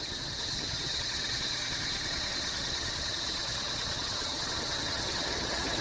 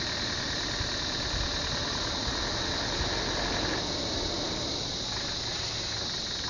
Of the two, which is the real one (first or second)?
second